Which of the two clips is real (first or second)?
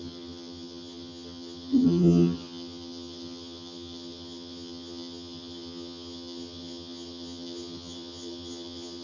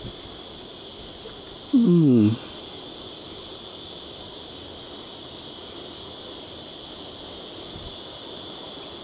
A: second